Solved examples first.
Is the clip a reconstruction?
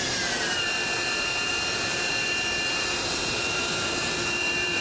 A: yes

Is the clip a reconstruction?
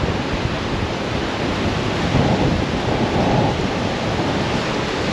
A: yes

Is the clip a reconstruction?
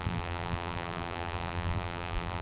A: yes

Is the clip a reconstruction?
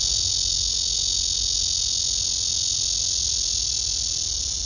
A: no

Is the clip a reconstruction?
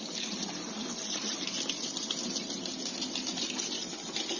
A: no